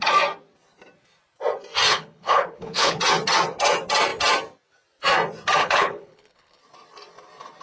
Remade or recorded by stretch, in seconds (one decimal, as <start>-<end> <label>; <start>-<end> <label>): 0.0-1.9 recorded; 1.9-3.0 remade; 3.0-5.6 recorded; 5.6-6.6 remade; 6.6-7.6 recorded